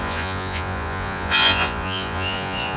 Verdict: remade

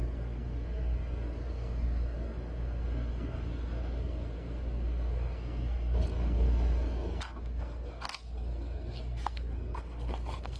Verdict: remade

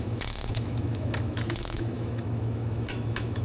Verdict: remade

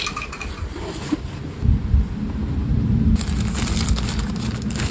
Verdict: recorded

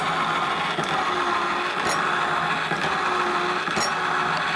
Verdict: recorded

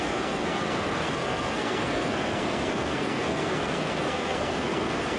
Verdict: remade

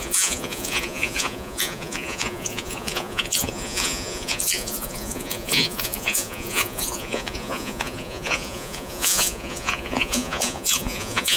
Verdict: remade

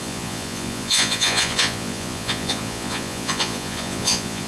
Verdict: remade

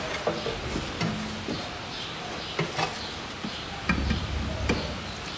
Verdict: recorded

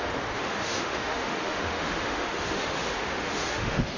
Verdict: remade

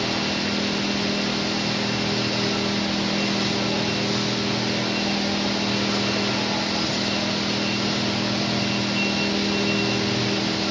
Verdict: recorded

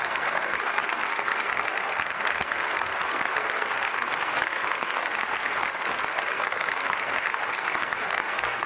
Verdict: remade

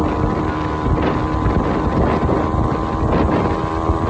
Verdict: recorded